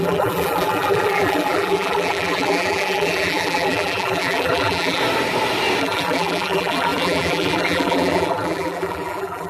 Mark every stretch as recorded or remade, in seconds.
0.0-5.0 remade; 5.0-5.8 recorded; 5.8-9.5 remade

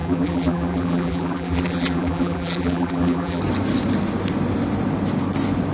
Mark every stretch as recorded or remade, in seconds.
0.0-3.4 remade; 3.4-5.7 recorded